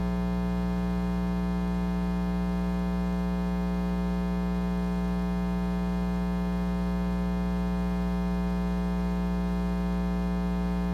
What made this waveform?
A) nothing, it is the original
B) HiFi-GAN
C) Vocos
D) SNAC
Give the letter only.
A